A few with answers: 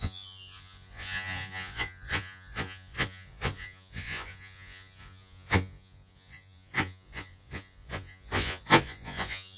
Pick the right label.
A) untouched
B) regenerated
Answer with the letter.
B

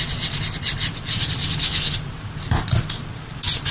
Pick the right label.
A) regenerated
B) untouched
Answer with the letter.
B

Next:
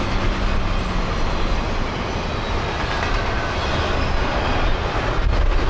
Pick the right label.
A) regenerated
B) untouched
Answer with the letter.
B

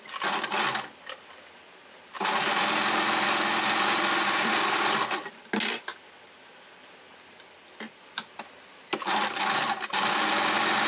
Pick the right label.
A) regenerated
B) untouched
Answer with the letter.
B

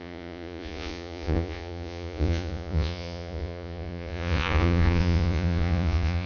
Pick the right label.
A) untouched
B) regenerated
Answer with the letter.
B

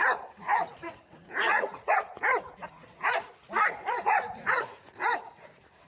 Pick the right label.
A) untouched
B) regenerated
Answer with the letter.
B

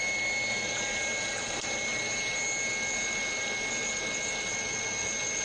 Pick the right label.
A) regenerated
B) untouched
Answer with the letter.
B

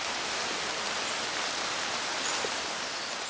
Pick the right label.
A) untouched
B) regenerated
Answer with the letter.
A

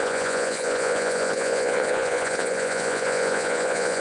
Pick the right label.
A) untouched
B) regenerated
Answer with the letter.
B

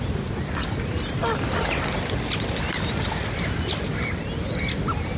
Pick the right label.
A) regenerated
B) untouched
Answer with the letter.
B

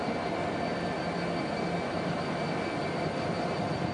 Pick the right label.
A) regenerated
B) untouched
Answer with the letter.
B